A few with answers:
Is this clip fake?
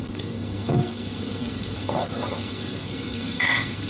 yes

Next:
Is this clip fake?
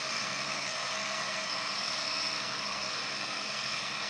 yes